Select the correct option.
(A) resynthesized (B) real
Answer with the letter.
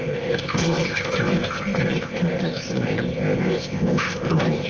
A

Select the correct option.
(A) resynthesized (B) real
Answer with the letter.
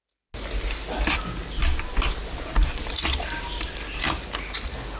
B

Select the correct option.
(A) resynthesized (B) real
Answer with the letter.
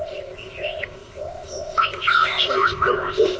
A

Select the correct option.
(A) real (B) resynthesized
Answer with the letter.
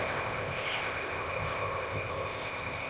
B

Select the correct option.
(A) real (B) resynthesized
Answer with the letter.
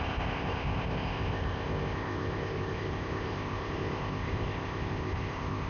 B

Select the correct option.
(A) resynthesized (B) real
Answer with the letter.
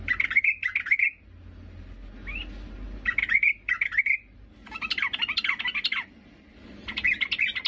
B